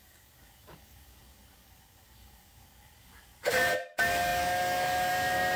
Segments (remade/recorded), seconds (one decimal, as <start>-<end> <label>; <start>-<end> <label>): 0.0-5.6 remade